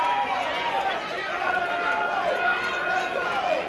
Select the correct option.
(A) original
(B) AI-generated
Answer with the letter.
B